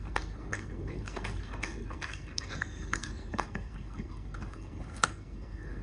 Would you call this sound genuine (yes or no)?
no